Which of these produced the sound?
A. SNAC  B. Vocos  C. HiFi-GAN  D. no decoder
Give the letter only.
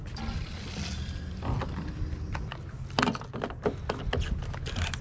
D